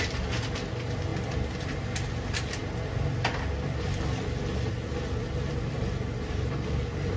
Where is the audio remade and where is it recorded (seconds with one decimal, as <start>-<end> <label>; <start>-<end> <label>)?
0.0-7.2 recorded